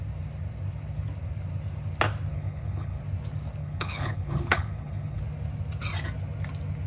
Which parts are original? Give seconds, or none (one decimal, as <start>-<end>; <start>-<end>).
0.0-2.3; 3.0-3.6; 5.2-6.9